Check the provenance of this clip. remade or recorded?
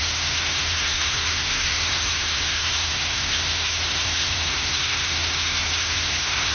remade